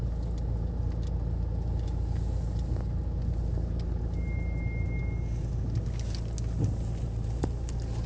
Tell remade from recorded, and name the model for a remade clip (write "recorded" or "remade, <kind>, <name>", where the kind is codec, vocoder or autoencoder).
recorded